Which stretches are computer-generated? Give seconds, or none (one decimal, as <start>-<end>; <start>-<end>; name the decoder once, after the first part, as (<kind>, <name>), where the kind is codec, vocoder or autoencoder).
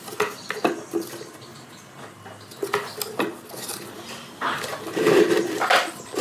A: none